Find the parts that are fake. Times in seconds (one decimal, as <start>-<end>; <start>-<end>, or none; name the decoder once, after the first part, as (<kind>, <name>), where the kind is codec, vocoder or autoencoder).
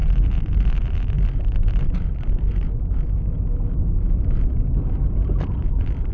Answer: 0.0-6.1 (vocoder, BigVGAN v2)